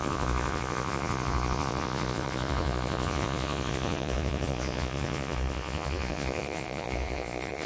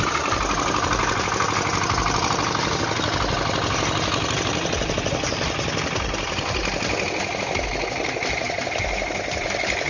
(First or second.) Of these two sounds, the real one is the second